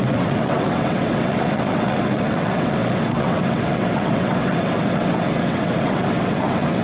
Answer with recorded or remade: remade